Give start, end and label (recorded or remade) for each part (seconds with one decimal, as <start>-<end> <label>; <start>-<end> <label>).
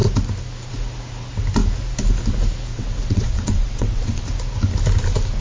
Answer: 0.0-2.7 recorded; 2.7-4.2 remade; 4.2-5.4 recorded